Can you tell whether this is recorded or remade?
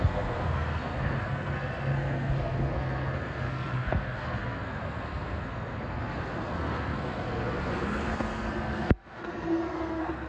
remade